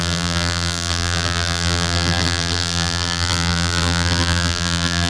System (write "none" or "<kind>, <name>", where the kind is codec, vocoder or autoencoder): vocoder, BigVGAN v2